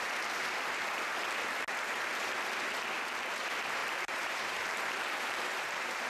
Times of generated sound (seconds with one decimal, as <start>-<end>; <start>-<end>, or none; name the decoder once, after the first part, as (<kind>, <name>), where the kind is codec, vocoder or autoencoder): 3.8-6.1 (vocoder, BigVGAN v2)